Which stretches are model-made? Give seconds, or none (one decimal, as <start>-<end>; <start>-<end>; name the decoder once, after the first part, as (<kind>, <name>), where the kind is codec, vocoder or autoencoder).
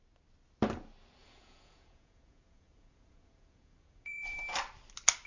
1.2-4.4 (vocoder, Vocos)